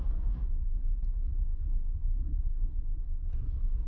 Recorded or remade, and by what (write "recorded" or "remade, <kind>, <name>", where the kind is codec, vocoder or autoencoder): remade, codec, SNAC